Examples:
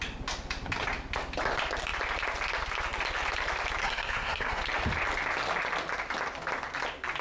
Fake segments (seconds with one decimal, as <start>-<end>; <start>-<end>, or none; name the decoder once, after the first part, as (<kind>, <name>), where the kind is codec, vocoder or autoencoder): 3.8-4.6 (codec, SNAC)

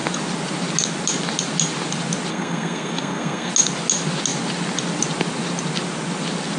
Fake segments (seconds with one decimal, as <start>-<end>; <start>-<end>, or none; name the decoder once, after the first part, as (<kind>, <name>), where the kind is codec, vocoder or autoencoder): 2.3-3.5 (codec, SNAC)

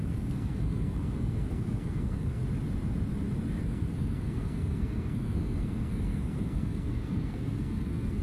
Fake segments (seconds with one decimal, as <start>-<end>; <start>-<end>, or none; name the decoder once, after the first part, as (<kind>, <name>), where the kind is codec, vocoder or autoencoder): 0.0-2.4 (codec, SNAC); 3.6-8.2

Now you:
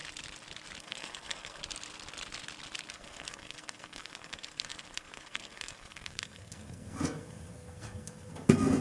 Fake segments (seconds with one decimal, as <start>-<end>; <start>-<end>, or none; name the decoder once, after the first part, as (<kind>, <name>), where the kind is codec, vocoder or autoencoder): 0.8-1.6 (codec, SNAC); 2.9-8.8

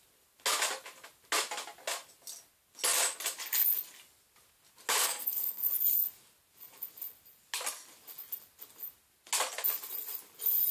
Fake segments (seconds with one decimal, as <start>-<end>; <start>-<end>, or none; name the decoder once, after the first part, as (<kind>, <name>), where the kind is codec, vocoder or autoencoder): 5.0-5.7 (codec, SNAC)